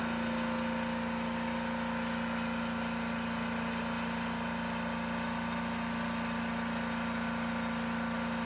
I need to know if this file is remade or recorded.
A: recorded